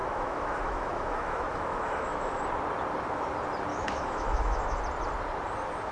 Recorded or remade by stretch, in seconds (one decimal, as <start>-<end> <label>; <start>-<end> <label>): 0.0-2.4 remade; 2.4-3.7 recorded; 3.7-4.8 remade; 4.8-5.9 recorded